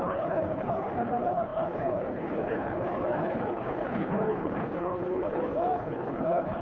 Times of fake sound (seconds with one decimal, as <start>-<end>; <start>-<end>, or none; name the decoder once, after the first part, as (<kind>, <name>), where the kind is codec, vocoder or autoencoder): 0.0-6.6 (codec, HILCodec)

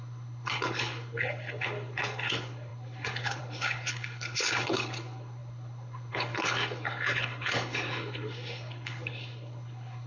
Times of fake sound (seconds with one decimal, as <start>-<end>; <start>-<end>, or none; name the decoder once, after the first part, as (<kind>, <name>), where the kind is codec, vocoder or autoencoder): 0.0-10.1 (codec, HILCodec)

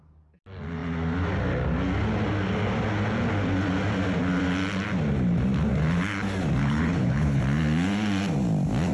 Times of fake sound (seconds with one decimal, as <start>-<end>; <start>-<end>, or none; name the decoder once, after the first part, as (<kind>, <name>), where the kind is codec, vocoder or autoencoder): 6.6-7.4 (codec, HILCodec)

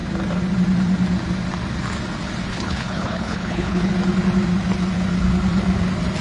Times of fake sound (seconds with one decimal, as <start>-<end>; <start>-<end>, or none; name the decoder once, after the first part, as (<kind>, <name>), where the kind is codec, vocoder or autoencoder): 2.5-3.9 (codec, HILCodec)

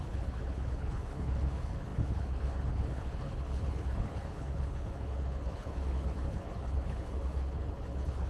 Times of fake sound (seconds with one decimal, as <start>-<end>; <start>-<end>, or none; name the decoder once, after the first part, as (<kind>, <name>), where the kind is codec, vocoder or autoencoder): 0.0-8.3 (codec, HILCodec)

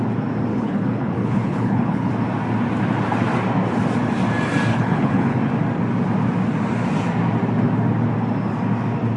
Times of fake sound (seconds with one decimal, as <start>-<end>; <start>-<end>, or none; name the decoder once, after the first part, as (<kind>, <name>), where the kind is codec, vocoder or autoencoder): 0.5-2.1 (codec, HILCodec); 4.7-5.4

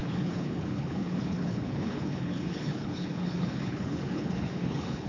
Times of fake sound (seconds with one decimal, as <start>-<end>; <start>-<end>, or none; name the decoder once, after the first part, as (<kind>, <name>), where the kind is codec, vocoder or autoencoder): 0.0-5.1 (codec, HILCodec)